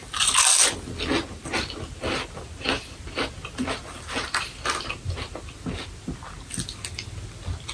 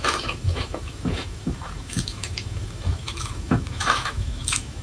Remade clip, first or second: second